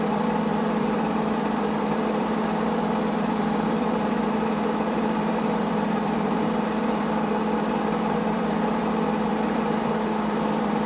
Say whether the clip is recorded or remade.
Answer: remade